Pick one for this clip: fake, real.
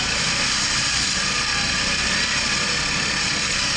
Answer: real